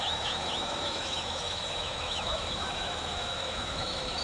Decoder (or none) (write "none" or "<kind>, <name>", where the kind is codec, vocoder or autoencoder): autoencoder, DAC-VAE